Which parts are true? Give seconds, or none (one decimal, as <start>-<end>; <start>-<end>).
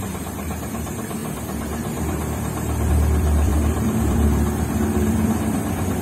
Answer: none